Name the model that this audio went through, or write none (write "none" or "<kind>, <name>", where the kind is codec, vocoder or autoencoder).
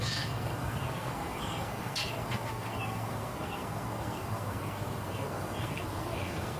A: codec, SNAC